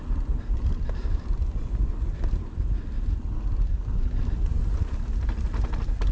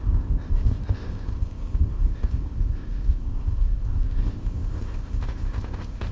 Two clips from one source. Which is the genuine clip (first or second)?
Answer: first